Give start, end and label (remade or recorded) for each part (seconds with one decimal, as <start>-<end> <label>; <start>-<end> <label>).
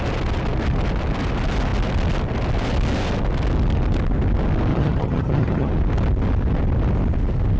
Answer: 0.0-4.7 recorded; 4.7-5.7 remade; 5.7-7.6 recorded